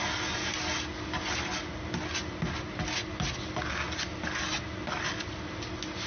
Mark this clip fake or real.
real